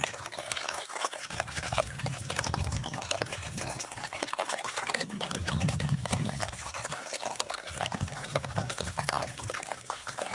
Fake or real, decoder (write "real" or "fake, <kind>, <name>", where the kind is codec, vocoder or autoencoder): fake, codec, SNAC